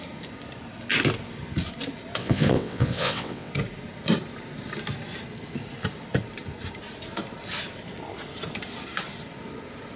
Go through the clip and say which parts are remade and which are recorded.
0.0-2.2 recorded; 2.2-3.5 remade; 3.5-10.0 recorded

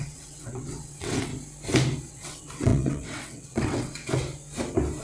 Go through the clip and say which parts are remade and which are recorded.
0.0-1.3 remade; 1.3-2.1 recorded; 2.1-4.2 remade; 4.2-5.0 recorded

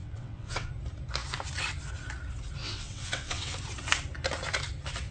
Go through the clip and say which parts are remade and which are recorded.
0.0-0.7 remade; 0.7-2.6 recorded; 2.6-3.5 remade; 3.5-5.1 recorded

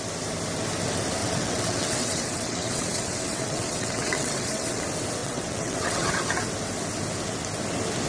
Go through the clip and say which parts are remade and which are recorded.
0.0-1.2 recorded; 1.2-4.8 remade; 4.8-5.2 recorded; 5.2-6.1 remade; 6.1-8.1 recorded

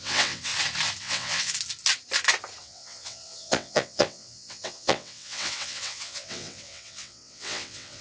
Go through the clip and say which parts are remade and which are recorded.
0.0-0.5 remade; 0.5-1.0 recorded; 1.0-1.5 remade; 1.5-2.6 recorded; 2.6-8.0 remade

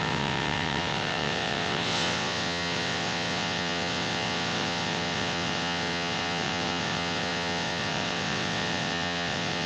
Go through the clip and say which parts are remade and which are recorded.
0.0-9.7 remade

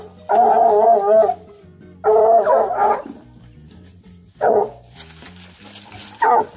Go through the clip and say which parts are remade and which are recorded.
0.0-3.9 recorded; 3.9-4.7 remade; 4.7-6.6 recorded

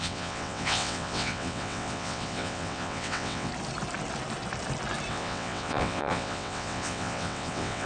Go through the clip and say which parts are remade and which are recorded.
0.0-3.5 remade; 3.5-5.1 recorded; 5.1-7.9 remade